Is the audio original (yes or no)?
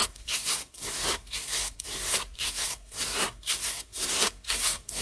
no